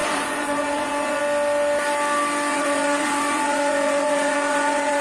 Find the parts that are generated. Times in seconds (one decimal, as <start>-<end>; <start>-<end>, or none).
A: 0.0-1.2; 2.5-5.0